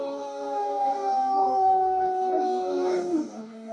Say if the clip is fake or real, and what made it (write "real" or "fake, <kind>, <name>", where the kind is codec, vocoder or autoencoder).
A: fake, codec, DAC